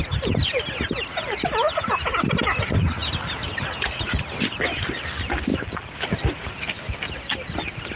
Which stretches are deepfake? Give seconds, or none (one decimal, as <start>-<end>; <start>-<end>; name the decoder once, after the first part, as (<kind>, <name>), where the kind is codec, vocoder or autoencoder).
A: none